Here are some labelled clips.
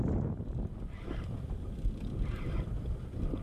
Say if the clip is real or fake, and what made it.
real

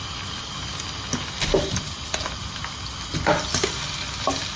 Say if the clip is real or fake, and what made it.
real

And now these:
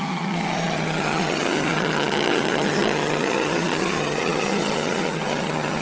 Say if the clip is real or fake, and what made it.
fake, vocoder, HiFi-GAN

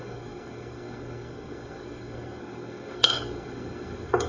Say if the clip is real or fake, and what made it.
fake, codec, SNAC